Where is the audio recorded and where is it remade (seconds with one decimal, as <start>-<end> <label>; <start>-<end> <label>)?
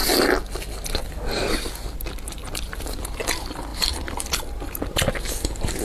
0.0-2.4 recorded; 2.4-3.0 remade; 3.0-3.7 recorded; 3.7-4.4 remade; 4.4-5.8 recorded